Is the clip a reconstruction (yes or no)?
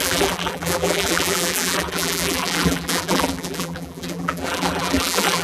yes